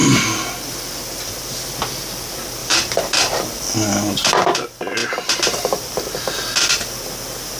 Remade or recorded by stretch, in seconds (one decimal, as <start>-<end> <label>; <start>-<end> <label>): 0.0-2.6 recorded; 2.6-3.5 remade; 3.5-5.0 recorded; 5.0-6.4 remade; 6.4-7.6 recorded